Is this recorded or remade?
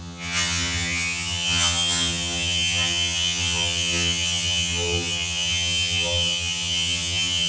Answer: remade